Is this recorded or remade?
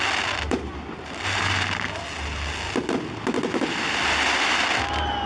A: recorded